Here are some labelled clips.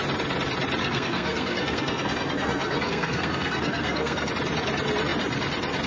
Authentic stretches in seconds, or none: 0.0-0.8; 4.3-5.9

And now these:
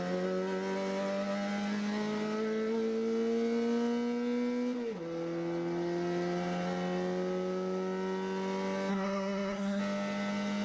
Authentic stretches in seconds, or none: 0.0-8.9; 9.8-10.6

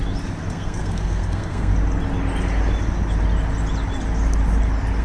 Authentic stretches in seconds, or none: 0.0-0.5; 1.7-5.0

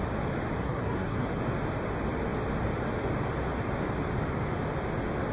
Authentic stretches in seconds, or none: 0.0-0.6; 1.4-5.3

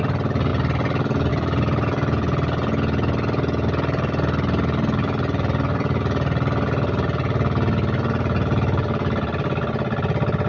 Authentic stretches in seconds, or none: 0.0-10.5

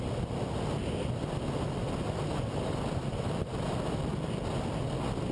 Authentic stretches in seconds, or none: 0.0-5.3

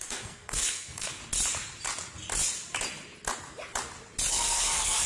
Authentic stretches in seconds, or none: 1.2-4.3